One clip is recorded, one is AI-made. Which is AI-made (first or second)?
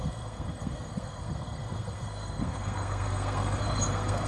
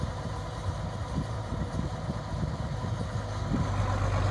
first